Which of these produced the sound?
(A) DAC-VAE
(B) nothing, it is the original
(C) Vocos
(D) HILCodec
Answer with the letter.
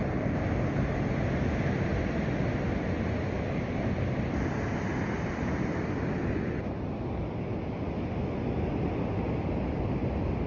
B